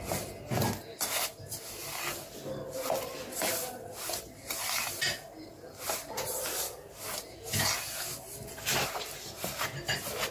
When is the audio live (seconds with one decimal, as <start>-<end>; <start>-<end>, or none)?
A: 0.0-6.5; 7.1-10.3

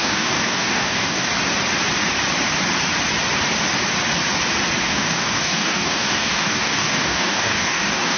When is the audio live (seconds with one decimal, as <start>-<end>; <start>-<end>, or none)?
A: 1.3-4.8

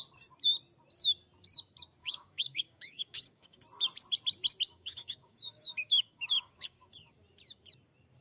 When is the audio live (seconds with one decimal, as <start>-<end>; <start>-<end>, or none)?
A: 0.0-2.0; 3.6-4.7; 7.1-8.2

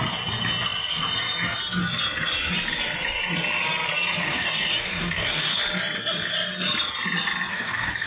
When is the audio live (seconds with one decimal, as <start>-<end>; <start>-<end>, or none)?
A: 0.0-4.2; 5.6-7.5

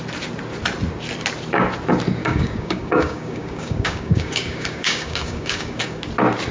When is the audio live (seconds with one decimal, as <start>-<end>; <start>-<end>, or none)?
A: 0.0-2.2; 6.1-6.5